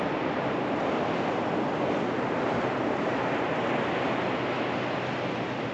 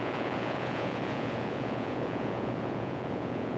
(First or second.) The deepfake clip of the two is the second